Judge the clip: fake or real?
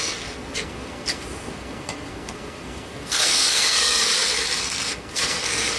fake